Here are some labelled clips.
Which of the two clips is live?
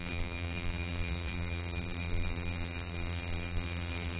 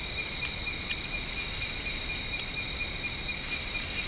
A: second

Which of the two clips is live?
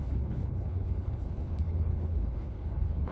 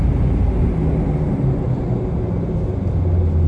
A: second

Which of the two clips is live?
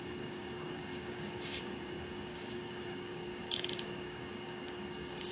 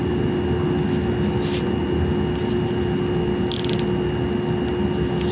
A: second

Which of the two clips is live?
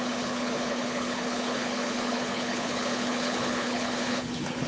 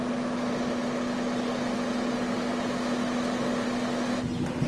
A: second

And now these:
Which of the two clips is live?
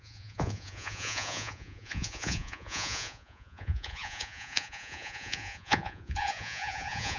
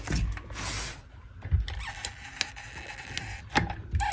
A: second